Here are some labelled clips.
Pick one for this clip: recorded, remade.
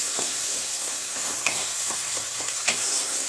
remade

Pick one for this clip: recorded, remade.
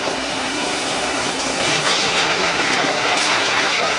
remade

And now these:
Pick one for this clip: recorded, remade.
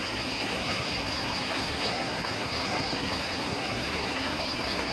remade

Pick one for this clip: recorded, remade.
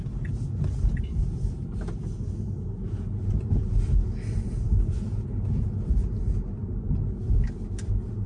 recorded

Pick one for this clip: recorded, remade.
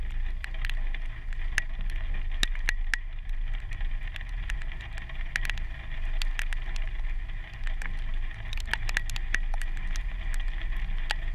recorded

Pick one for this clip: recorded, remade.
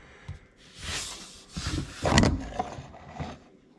recorded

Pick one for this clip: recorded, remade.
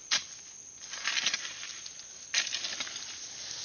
recorded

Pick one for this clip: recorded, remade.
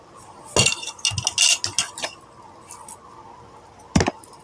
recorded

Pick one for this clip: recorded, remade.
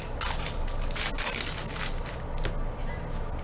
recorded